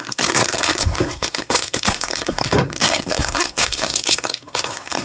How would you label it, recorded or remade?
remade